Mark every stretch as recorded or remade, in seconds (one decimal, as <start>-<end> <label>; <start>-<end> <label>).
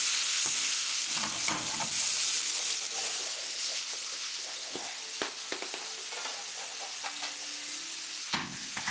0.0-1.0 remade; 1.0-3.2 recorded; 3.2-5.0 remade; 5.0-8.2 recorded; 8.2-8.9 remade